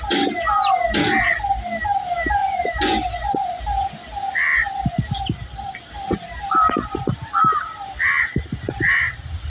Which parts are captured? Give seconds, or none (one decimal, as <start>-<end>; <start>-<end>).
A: 0.0-2.4; 3.6-9.5